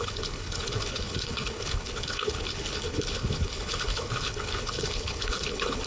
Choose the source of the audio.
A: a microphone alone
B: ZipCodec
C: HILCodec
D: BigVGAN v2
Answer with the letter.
C